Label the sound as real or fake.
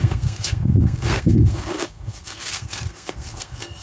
fake